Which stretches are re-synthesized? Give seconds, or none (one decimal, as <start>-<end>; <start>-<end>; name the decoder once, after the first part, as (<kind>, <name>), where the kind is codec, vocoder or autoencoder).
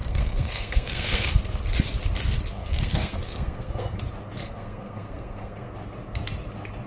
0.0-1.4 (codec, SNAC); 2.6-4.0; 4.4-5.7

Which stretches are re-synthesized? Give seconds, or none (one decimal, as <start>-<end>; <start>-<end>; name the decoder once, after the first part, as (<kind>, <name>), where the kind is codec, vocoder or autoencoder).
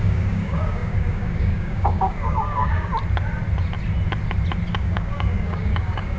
0.0-2.9 (codec, DAC); 4.7-6.2